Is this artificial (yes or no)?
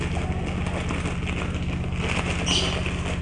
no